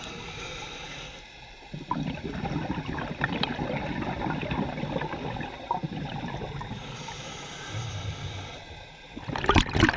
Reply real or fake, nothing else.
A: real